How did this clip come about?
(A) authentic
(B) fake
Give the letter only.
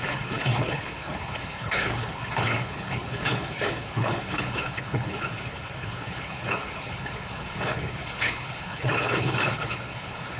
B